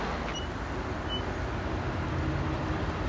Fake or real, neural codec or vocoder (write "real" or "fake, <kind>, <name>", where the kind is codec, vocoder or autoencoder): real